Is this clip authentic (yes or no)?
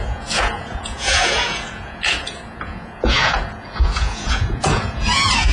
no